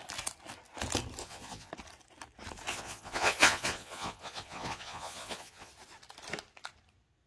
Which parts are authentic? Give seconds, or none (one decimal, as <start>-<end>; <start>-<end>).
0.0-1.2; 1.7-2.7; 5.7-7.3